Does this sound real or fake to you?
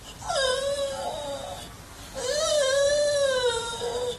real